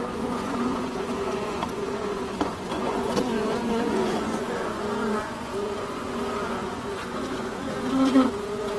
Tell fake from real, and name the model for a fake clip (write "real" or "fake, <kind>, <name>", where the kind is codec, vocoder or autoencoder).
fake, vocoder, Vocos